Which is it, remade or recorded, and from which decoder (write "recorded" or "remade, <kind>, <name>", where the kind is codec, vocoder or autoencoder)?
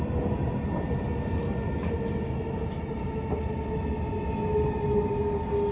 recorded